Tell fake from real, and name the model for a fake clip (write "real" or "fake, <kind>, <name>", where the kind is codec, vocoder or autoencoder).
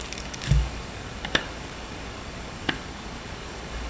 fake, codec, DAC